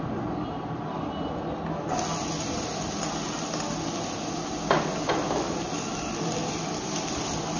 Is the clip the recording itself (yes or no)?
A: yes